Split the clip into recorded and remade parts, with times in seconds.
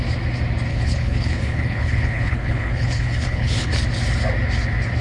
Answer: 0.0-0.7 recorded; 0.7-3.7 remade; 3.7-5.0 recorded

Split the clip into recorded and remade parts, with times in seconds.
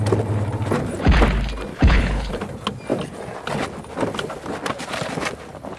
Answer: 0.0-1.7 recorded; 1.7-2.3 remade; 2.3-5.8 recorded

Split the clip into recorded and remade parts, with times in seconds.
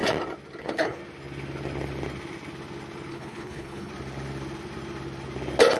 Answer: 0.0-0.6 recorded; 0.6-1.0 remade; 1.0-3.1 recorded; 3.1-3.9 remade; 3.9-5.8 recorded